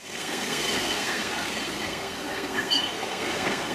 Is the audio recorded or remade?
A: remade